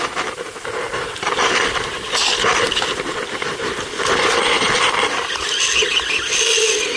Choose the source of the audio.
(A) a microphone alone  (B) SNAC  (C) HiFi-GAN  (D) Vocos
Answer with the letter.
A